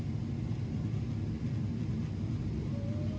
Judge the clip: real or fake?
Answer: real